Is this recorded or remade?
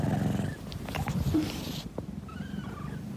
recorded